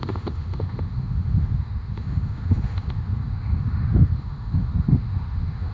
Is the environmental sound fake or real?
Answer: fake